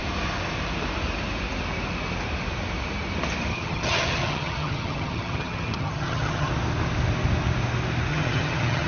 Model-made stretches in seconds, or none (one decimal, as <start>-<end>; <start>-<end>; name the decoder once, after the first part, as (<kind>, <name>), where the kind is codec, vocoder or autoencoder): 3.5-6.5 (vocoder, HiFi-GAN); 8.1-8.9